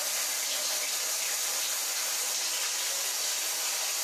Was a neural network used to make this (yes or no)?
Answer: no